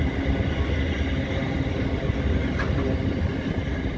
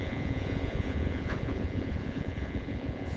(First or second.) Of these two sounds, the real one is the first